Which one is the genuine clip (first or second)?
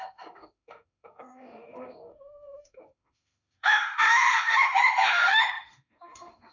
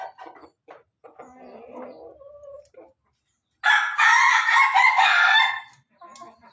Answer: second